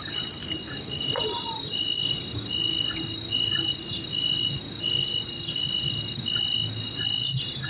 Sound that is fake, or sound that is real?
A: real